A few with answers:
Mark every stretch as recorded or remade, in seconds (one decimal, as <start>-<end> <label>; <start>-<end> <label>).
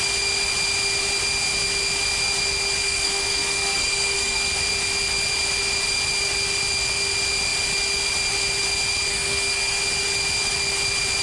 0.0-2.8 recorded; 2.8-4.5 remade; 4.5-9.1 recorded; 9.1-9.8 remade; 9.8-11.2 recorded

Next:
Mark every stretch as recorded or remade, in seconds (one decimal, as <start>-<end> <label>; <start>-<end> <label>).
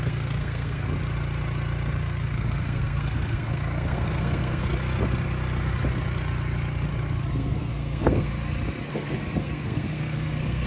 0.0-0.9 remade; 0.9-2.0 recorded; 2.0-4.7 remade; 4.7-7.3 recorded; 7.3-8.3 remade; 8.3-8.9 recorded; 8.9-10.7 remade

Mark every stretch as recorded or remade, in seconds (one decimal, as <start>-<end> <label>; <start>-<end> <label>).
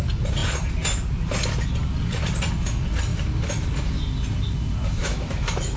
0.0-5.0 recorded; 5.0-5.8 remade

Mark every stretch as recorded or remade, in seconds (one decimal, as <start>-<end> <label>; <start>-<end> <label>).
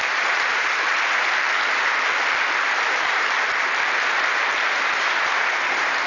0.0-0.9 remade; 0.9-4.6 recorded; 4.6-6.1 remade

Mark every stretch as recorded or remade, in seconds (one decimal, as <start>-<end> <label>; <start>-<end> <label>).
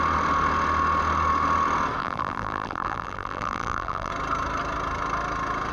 0.0-2.0 recorded; 2.0-4.1 remade; 4.1-5.7 recorded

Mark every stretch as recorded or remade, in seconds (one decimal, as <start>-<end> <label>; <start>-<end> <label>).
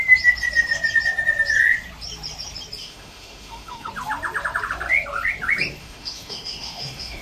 0.0-2.8 recorded; 2.8-3.9 remade; 3.9-5.8 recorded; 5.8-7.2 remade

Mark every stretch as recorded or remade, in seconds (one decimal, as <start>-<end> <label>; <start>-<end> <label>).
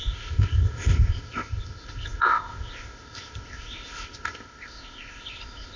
0.0-5.8 remade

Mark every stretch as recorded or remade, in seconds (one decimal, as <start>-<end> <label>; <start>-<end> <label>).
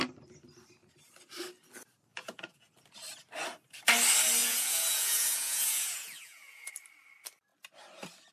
0.0-2.1 recorded; 2.1-2.7 remade; 2.7-4.4 recorded; 4.4-6.7 remade; 6.7-8.3 recorded